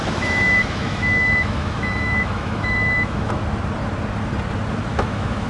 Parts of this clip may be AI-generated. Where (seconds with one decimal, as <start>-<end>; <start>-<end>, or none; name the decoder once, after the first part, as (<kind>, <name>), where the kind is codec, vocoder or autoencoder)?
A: 0.0-3.3 (autoencoder, DAC-VAE); 4.9-5.5